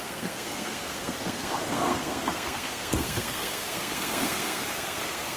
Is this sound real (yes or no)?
no